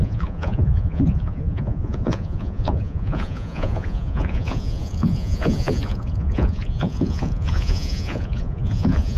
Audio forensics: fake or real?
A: fake